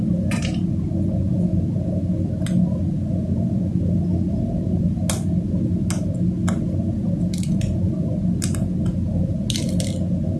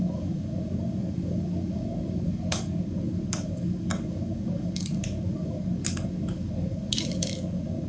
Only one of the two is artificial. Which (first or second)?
second